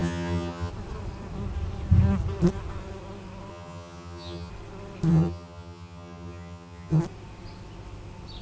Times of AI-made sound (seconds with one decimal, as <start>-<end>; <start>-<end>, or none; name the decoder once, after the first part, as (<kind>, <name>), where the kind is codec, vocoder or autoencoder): 0.0-0.7 (vocoder, HiFi-GAN); 3.5-4.5; 5.1-7.0